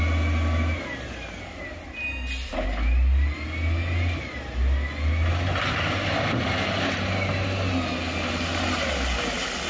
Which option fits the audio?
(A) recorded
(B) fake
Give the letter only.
A